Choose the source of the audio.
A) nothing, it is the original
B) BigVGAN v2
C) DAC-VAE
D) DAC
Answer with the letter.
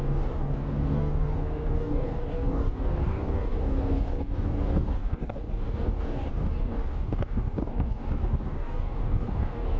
D